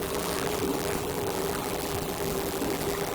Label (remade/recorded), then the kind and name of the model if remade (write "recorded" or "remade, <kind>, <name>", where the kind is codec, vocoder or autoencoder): remade, vocoder, BigVGAN v2